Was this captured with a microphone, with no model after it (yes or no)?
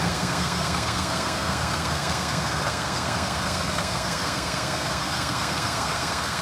no